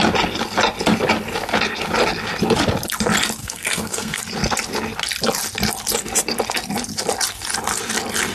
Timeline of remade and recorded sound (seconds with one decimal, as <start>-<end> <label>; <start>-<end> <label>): 0.0-3.4 recorded; 3.4-4.2 remade; 4.2-8.3 recorded